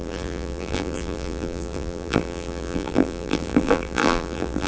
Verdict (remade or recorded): remade